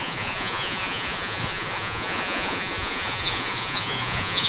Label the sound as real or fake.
fake